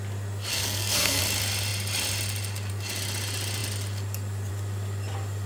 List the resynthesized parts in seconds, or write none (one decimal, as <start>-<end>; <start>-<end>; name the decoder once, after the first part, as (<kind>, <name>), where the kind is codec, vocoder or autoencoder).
0.5-1.2 (codec, SNAC)